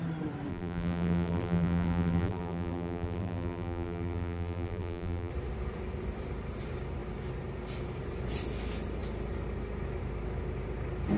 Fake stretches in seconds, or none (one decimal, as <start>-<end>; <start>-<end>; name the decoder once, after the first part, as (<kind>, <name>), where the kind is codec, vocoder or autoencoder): 0.5-5.3 (vocoder, BigVGAN v2)